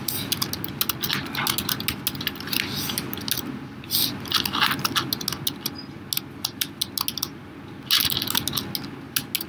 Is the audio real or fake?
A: real